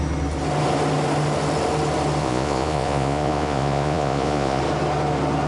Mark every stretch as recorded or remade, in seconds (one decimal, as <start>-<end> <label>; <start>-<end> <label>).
0.0-2.2 recorded; 2.2-4.6 remade; 4.6-5.5 recorded